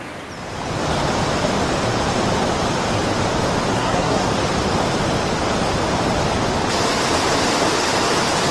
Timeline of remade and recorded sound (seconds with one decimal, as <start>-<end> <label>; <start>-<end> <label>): 0.0-3.7 recorded; 3.7-4.3 remade; 4.3-8.5 recorded